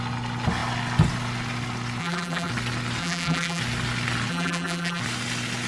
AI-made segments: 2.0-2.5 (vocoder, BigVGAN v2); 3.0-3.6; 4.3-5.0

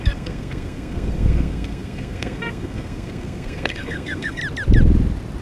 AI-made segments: 0.0-4.4 (codec, SNAC)

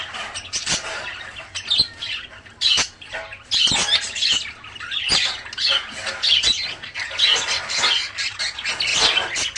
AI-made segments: none

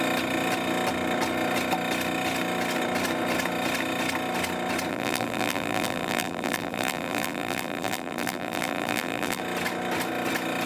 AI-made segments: 4.9-9.4 (vocoder, BigVGAN v2)

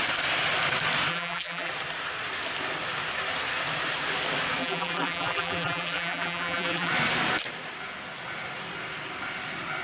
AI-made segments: 1.1-1.7 (vocoder, BigVGAN v2); 4.6-6.9

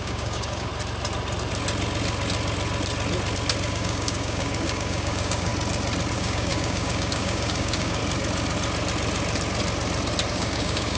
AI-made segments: 0.0-0.7 (codec, DAC); 3.7-5.5; 6.1-8.0; 10.3-11.0